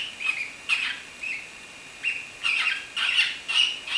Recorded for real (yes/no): yes